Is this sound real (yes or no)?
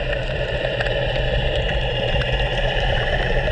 no